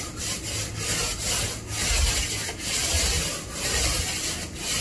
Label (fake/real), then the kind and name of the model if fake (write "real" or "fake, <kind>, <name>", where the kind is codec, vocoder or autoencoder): real